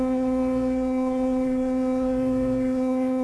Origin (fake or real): fake